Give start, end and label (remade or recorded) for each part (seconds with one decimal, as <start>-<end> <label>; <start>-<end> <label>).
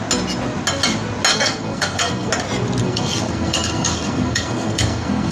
0.0-1.3 recorded; 1.3-2.3 remade; 2.3-2.8 recorded; 2.8-5.3 remade